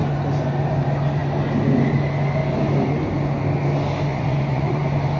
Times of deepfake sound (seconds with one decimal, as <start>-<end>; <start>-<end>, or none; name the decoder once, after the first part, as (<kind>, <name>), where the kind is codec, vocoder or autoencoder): 4.1-4.8 (vocoder, Vocos)